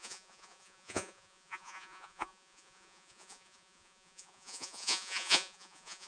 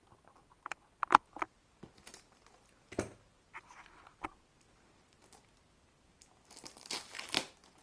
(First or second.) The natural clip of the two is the second